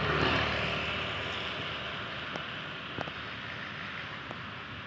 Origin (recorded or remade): recorded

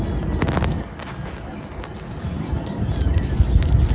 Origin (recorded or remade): recorded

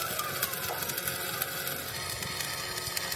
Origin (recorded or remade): recorded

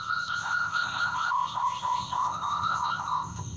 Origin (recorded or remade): remade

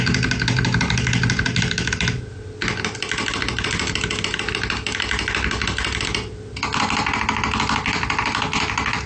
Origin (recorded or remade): recorded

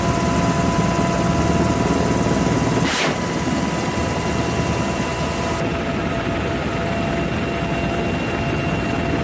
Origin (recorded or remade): recorded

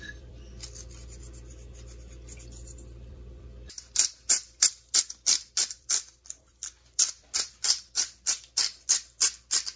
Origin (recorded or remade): remade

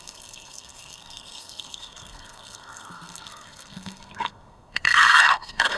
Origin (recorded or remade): remade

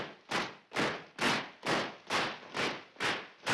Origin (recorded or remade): recorded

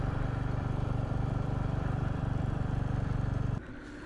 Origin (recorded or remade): remade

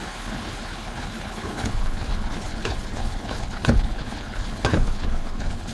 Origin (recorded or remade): remade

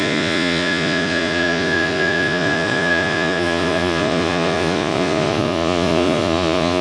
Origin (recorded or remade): remade